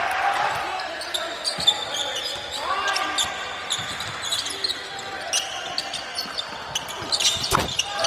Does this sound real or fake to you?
real